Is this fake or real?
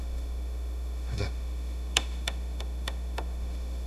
fake